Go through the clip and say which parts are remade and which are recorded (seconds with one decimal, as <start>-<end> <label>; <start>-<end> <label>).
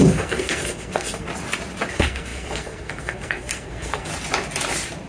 0.0-1.3 remade; 1.3-1.9 recorded; 1.9-4.1 remade; 4.1-5.1 recorded